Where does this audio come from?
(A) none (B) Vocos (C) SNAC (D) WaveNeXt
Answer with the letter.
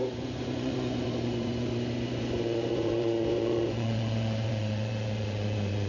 B